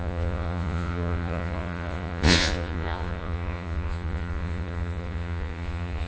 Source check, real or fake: fake